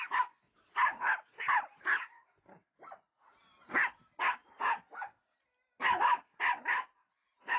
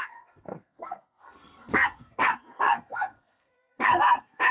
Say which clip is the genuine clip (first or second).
first